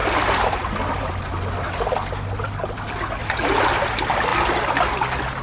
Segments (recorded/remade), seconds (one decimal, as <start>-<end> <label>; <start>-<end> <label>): 0.0-5.4 recorded